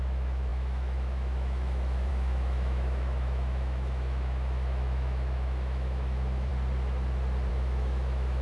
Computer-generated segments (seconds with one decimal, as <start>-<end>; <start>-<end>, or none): 0.0-6.5; 7.5-8.4

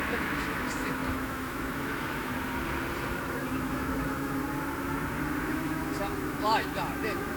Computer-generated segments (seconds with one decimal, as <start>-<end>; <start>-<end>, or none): 0.0-2.3; 3.1-4.4; 5.5-7.4

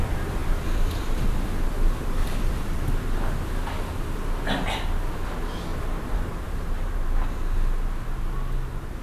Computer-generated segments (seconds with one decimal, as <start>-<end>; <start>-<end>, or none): 0.4-2.8; 5.7-6.3

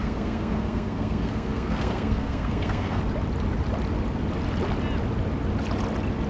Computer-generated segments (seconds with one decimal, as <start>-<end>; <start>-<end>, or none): 0.0-3.0

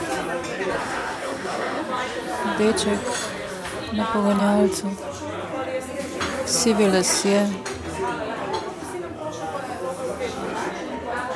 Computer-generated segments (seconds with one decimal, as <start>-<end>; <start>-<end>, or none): 0.8-1.8